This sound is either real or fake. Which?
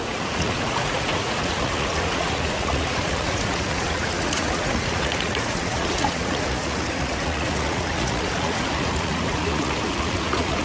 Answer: fake